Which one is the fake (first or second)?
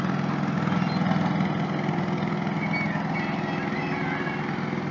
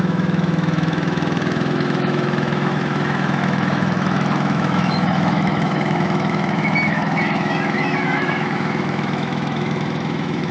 second